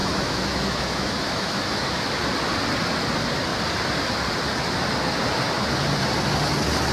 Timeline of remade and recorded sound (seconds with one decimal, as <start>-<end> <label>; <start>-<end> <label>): 0.0-2.2 remade; 2.2-6.9 recorded